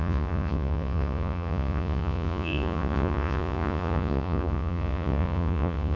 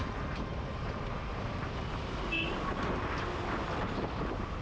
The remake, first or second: first